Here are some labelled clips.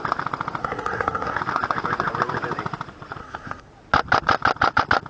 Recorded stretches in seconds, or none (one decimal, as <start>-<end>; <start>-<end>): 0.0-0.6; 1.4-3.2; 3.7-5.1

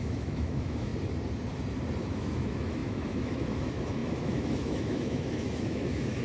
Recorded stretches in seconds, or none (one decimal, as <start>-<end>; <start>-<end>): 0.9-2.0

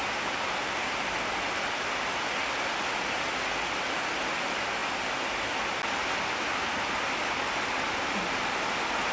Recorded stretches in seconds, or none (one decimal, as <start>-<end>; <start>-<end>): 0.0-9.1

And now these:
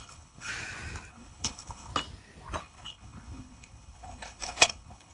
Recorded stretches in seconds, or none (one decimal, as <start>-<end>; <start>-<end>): 0.5-1.1; 1.9-2.6

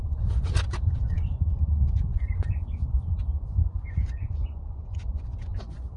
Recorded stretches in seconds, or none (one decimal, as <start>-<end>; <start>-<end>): none

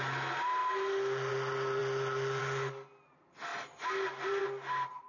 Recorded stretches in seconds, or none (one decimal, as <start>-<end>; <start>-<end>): 0.0-5.1